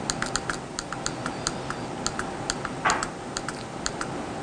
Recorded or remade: recorded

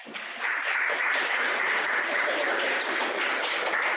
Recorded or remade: remade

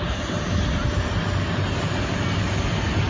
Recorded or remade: recorded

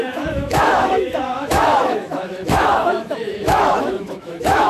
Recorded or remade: remade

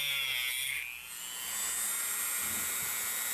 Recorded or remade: recorded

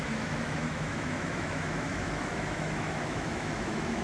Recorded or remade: remade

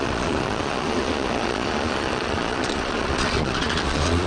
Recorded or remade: remade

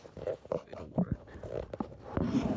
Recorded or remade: remade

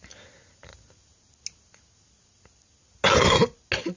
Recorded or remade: recorded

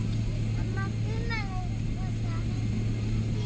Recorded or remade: recorded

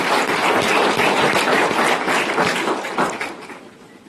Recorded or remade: remade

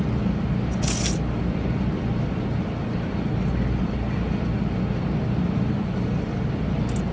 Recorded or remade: recorded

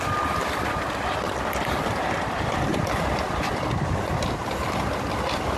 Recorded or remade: recorded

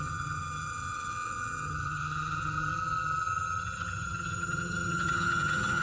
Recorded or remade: remade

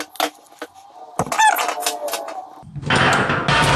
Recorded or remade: recorded